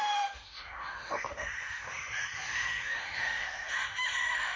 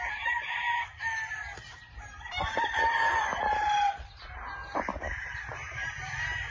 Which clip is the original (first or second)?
second